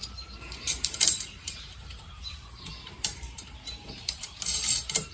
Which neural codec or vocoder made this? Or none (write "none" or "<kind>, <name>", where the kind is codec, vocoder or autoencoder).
vocoder, BigVGAN v2